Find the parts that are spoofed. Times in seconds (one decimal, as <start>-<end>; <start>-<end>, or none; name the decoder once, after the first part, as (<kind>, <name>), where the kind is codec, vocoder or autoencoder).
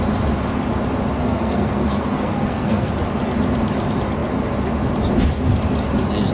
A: 1.2-2.9 (codec, SNAC)